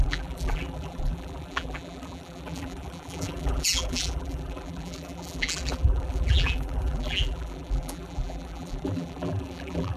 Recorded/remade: remade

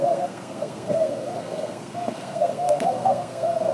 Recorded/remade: remade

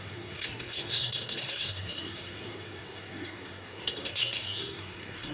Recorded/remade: remade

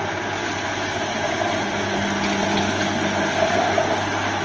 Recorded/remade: recorded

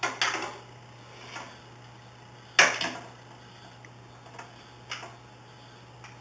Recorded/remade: recorded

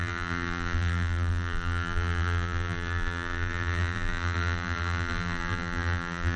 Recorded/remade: remade